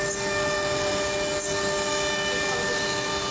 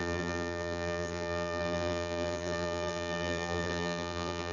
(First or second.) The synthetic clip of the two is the second